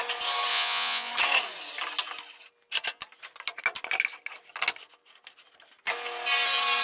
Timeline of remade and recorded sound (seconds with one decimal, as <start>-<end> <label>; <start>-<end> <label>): 0.0-0.5 recorded; 0.5-1.1 remade; 1.1-6.8 recorded